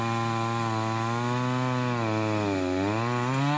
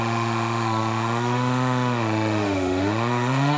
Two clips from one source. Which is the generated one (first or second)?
second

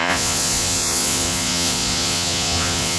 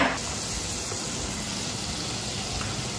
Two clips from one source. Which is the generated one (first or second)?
first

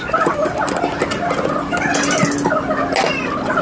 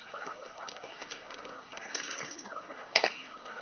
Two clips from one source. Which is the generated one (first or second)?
second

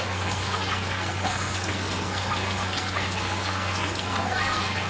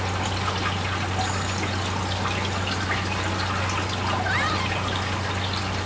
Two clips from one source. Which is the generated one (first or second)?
first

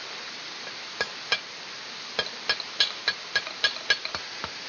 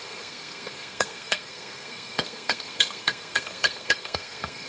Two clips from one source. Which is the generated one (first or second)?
second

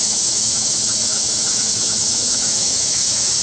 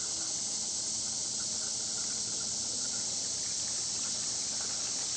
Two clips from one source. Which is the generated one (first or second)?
first